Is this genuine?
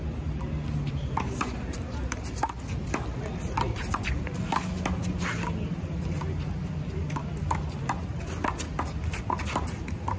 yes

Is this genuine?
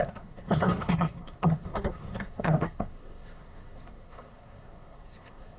no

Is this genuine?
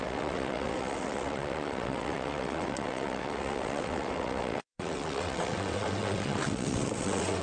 no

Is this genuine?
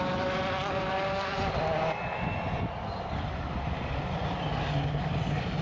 yes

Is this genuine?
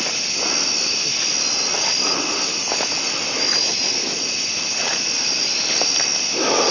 yes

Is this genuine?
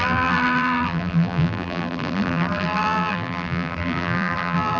no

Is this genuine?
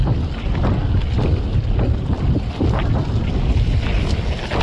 yes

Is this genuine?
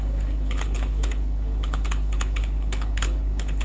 no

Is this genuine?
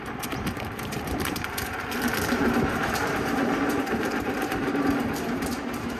no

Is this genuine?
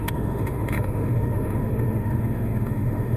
no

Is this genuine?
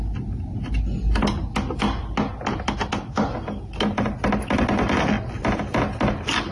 yes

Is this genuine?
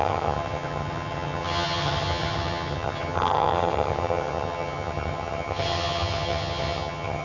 no